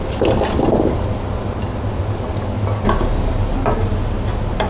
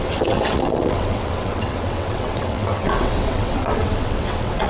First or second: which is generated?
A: second